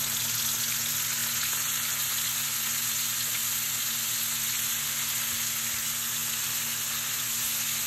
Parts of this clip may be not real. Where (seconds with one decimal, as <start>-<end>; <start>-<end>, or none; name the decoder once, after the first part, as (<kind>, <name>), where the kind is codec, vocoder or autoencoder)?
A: none